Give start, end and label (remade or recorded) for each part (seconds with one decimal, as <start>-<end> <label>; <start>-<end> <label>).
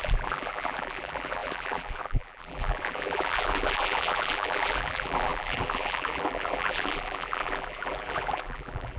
0.0-9.0 remade